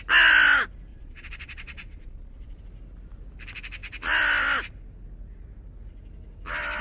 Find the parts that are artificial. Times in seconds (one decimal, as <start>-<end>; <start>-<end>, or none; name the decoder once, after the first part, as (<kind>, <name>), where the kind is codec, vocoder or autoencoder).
0.9-2.6 (vocoder, Vocos)